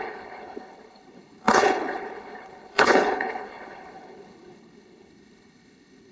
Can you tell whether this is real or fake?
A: fake